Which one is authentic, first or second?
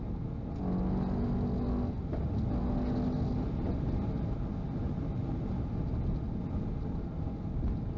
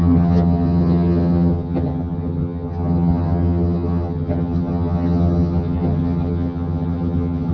first